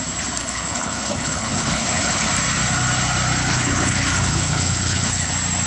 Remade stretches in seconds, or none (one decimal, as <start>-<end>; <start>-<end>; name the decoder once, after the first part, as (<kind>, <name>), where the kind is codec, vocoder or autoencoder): 0.4-2.3 (codec, HILCodec); 3.5-5.3